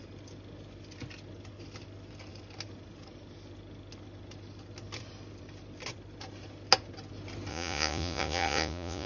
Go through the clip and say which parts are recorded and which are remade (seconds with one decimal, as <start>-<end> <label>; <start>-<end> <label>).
0.0-7.5 recorded; 7.5-9.1 remade